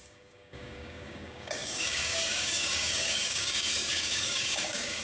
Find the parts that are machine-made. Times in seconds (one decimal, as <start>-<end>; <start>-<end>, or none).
0.0-5.0

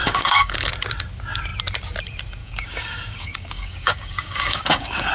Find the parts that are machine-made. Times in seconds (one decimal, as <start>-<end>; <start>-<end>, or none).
0.0-0.7; 2.4-5.1